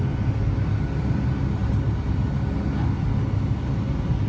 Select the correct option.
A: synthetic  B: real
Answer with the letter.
B